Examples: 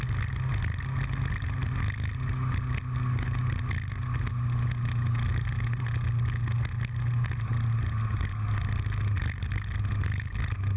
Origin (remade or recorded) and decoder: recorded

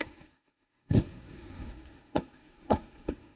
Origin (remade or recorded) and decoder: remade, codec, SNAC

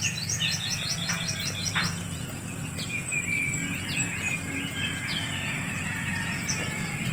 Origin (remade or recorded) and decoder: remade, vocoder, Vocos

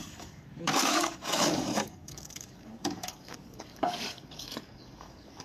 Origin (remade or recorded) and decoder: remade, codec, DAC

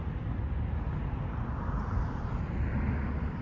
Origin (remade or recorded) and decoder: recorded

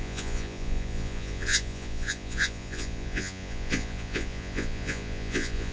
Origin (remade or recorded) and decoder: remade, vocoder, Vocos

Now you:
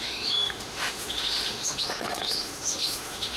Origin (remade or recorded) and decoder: remade, autoencoder, DAC-VAE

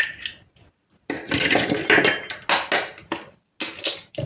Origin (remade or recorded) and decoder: recorded